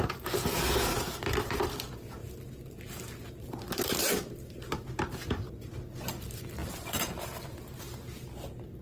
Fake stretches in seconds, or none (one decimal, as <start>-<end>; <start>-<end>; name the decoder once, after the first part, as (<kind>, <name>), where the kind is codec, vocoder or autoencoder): 2.2-5.7 (vocoder, BigVGAN v2); 6.6-7.8